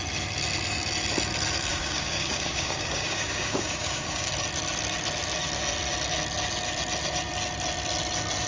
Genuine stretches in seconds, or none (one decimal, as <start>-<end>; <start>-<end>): 0.0-1.7; 4.3-8.5